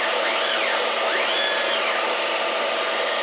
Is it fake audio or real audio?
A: real